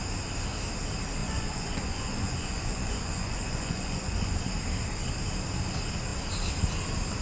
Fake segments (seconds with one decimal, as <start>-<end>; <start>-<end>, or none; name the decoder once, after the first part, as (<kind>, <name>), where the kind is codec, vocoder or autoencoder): 1.2-4.3 (vocoder, Vocos)